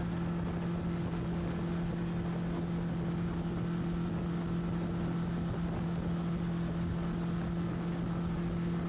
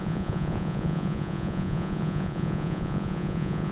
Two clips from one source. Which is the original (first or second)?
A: first